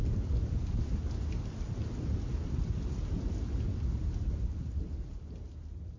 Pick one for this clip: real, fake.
real